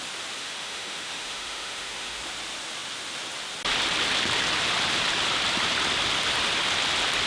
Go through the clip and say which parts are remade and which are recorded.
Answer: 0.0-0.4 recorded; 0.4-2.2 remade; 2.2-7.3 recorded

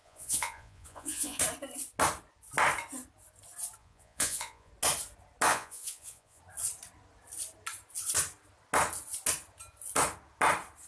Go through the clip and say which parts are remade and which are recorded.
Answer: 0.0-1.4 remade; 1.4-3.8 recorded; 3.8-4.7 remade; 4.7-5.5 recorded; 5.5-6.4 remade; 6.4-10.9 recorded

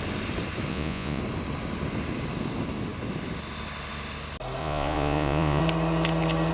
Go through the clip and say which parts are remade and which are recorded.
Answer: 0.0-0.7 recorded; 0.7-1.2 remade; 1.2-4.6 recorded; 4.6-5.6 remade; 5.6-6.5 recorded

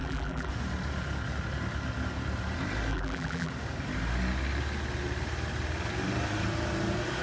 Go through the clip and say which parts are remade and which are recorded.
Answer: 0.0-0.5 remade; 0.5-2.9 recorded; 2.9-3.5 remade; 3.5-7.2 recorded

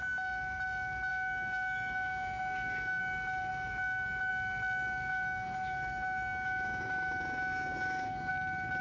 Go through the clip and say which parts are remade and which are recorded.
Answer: 0.0-1.1 recorded; 1.1-3.0 remade; 3.0-5.1 recorded; 5.1-8.3 remade; 8.3-8.8 recorded

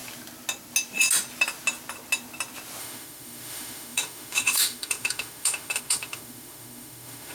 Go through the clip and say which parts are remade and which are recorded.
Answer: 0.0-2.8 recorded; 2.8-7.3 remade

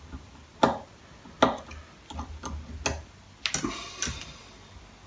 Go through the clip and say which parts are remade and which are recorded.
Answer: 0.0-5.1 recorded